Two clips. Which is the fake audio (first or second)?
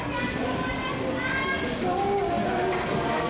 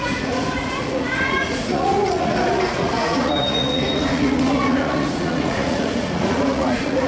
second